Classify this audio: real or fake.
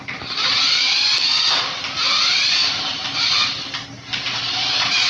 real